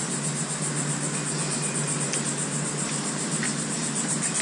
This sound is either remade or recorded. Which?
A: recorded